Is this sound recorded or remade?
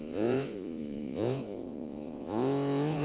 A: remade